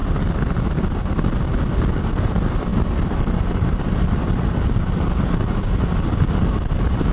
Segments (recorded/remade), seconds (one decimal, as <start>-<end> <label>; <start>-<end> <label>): 0.0-2.0 recorded; 2.0-2.7 remade; 2.7-5.8 recorded; 5.8-7.1 remade